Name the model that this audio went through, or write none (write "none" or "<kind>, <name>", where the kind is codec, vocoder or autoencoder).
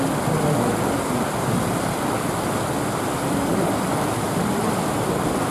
none